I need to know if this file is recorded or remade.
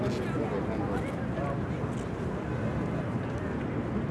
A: recorded